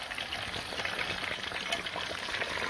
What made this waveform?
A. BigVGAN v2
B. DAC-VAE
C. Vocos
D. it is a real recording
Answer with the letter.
D